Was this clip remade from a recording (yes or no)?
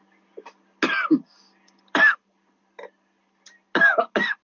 no